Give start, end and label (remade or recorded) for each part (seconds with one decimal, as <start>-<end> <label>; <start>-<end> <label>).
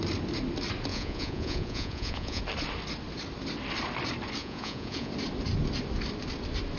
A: 0.0-0.9 recorded; 0.9-2.4 remade; 2.4-4.4 recorded; 4.4-5.1 remade; 5.1-6.8 recorded